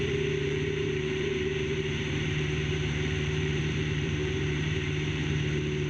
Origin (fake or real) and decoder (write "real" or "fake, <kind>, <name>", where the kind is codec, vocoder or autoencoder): fake, vocoder, BigVGAN v2